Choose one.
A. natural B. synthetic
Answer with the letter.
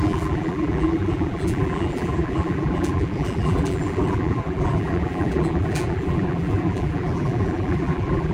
B